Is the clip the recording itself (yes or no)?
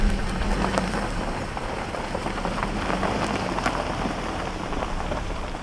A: yes